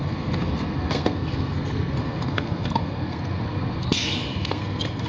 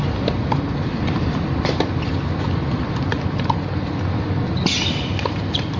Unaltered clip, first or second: second